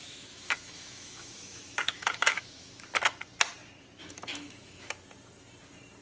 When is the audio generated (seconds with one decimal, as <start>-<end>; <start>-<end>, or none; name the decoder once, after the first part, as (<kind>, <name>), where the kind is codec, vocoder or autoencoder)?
0.0-3.0 (autoencoder, DAC-VAE); 4.0-4.9